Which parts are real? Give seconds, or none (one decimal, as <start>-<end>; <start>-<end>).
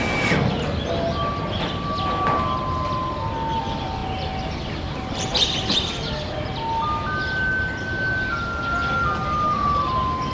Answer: 0.0-10.3